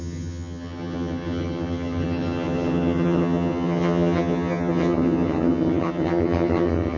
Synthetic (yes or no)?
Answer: yes